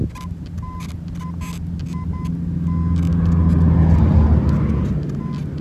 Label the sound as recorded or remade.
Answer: recorded